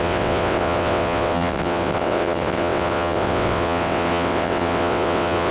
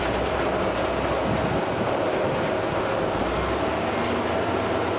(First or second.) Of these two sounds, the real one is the second